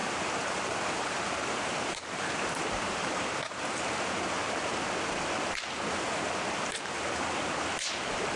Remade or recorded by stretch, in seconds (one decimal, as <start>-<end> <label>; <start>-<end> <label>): 0.0-3.3 remade; 3.3-8.4 recorded